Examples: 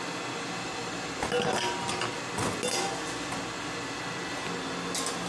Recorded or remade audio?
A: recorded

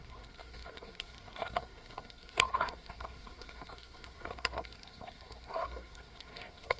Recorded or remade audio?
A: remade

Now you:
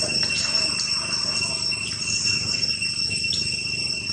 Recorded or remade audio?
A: recorded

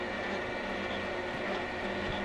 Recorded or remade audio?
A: recorded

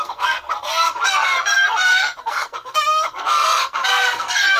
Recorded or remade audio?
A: remade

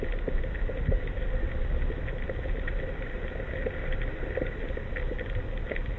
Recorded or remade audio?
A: recorded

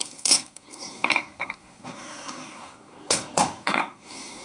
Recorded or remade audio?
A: remade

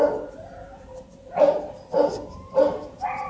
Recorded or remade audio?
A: recorded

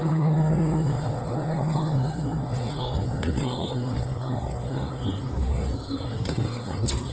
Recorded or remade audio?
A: remade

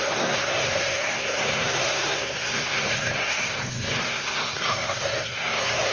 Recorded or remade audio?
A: remade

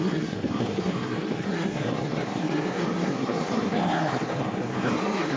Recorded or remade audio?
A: remade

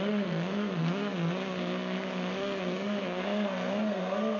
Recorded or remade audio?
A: remade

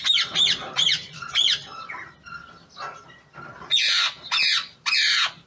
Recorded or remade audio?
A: recorded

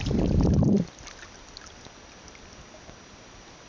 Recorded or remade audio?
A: recorded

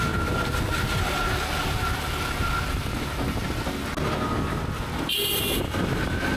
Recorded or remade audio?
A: recorded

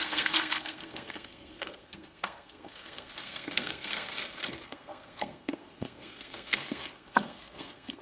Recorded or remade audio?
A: remade